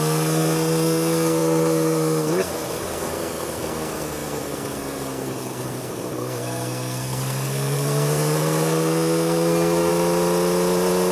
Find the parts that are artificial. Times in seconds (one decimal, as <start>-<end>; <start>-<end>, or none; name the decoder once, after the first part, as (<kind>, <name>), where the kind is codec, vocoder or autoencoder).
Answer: 0.0-9.9 (codec, SNAC)